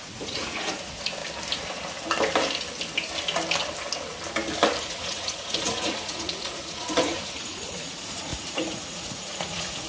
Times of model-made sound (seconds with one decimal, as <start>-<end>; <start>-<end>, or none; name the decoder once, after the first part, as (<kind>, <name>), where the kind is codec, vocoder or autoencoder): 0.0-1.2 (vocoder, Vocos); 4.8-9.9